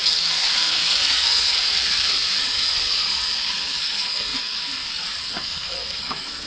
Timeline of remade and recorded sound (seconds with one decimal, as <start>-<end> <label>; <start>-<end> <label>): 0.0-6.5 remade